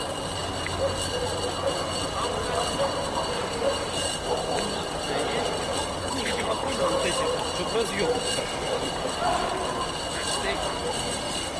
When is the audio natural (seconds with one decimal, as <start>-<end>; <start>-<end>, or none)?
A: 0.0-6.0; 6.9-11.6